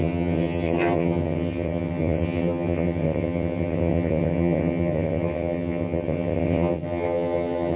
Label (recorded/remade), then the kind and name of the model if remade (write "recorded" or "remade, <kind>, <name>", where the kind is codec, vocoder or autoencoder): remade, vocoder, HiFi-GAN